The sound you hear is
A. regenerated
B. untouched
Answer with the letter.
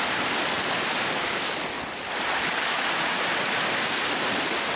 B